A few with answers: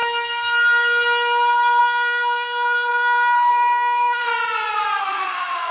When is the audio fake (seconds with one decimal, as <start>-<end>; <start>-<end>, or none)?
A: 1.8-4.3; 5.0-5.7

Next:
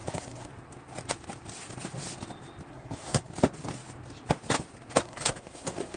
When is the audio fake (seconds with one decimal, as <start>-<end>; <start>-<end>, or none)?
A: 0.0-0.5; 2.7-3.3; 5.0-6.0

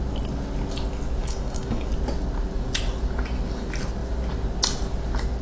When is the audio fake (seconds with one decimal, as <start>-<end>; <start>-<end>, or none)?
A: 1.2-1.9